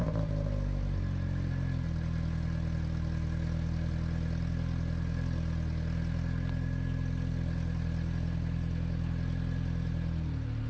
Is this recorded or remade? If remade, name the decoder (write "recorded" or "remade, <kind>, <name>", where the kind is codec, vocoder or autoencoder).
recorded